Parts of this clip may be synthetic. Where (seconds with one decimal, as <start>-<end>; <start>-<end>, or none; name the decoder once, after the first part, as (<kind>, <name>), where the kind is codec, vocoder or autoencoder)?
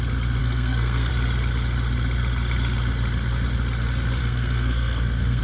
0.4-1.1 (codec, SNAC); 4.2-5.4